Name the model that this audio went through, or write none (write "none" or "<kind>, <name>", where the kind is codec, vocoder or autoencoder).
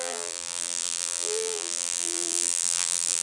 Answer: vocoder, BigVGAN v2